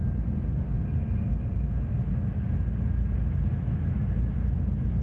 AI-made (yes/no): no